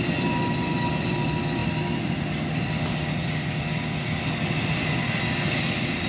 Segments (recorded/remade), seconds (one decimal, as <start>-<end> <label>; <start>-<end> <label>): 0.0-6.1 recorded